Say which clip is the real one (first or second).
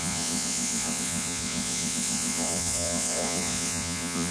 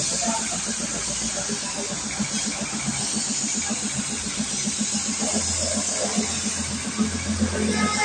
second